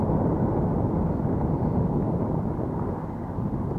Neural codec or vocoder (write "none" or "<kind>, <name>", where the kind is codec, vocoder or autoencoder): none